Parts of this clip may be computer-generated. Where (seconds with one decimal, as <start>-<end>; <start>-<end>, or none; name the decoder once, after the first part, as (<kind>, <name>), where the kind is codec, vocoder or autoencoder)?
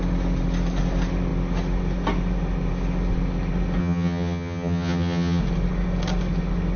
3.8-5.4 (vocoder, HiFi-GAN)